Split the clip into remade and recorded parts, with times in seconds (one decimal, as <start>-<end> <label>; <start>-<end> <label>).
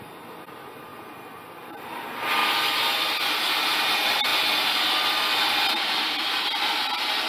0.0-7.3 recorded